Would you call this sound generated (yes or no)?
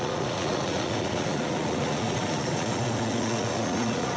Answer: yes